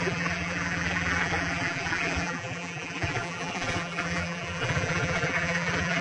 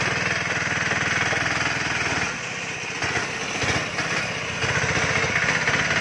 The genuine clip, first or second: second